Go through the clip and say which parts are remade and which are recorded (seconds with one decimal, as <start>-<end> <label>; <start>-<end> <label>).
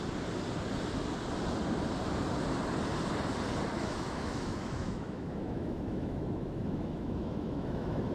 0.0-3.7 recorded; 3.7-8.1 remade